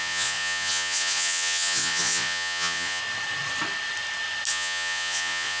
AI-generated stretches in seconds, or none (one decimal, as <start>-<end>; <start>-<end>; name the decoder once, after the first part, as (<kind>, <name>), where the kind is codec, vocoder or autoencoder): 0.0-3.0 (vocoder, Vocos); 4.5-5.6